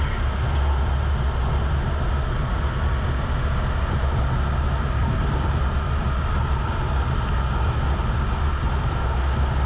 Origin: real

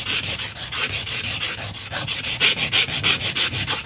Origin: real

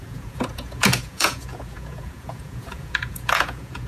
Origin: fake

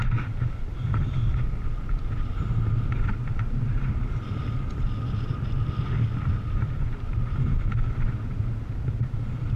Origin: real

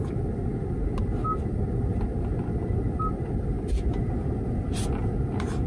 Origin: real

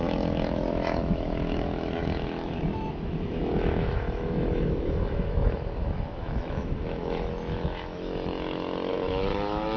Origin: fake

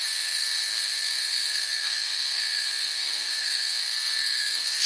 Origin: fake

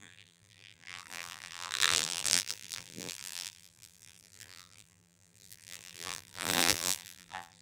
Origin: fake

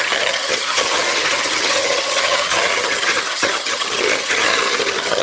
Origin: fake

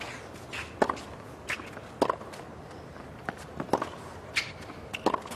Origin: real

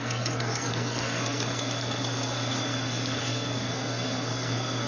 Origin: fake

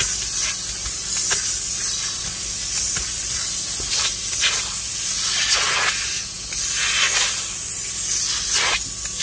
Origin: real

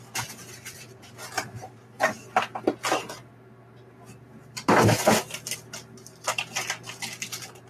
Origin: real